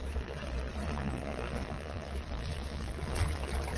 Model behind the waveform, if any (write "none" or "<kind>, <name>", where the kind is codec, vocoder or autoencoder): vocoder, Vocos